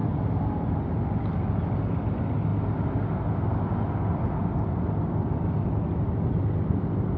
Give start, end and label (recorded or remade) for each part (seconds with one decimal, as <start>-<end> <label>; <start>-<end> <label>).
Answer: 0.0-7.2 recorded